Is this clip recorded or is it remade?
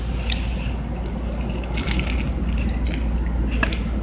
recorded